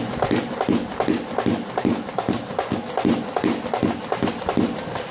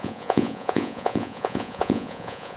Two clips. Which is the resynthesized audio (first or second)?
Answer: second